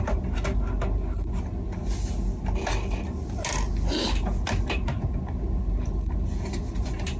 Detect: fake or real real